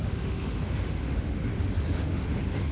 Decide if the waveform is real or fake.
fake